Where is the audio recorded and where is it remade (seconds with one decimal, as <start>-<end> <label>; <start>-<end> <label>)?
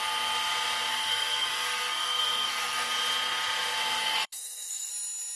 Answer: 0.0-0.9 recorded; 0.9-2.9 remade; 2.9-4.0 recorded; 4.0-4.9 remade; 4.9-5.4 recorded